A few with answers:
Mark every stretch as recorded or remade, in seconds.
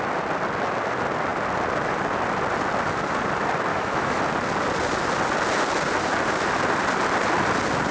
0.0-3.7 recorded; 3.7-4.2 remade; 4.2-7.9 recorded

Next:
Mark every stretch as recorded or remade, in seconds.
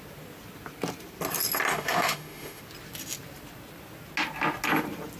0.0-1.7 recorded; 1.7-2.6 remade; 2.6-5.2 recorded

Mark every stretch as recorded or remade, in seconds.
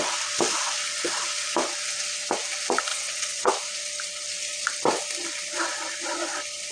0.0-2.9 recorded; 2.9-3.5 remade; 3.5-6.7 recorded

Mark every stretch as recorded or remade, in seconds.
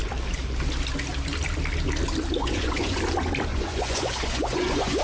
0.0-2.4 recorded; 2.4-3.0 remade; 3.0-3.5 recorded; 3.5-5.0 remade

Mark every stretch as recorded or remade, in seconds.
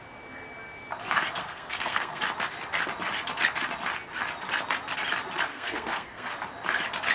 0.0-1.4 recorded; 1.4-2.2 remade; 2.2-5.5 recorded; 5.5-6.3 remade; 6.3-7.1 recorded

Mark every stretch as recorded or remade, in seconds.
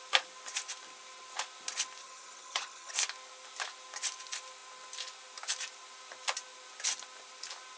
0.0-2.0 recorded; 2.0-2.9 remade; 2.9-7.8 recorded